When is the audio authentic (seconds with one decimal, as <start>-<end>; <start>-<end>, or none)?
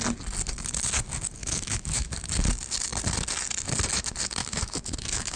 0.0-1.4; 2.1-4.4